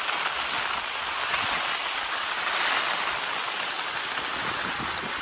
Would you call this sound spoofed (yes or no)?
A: no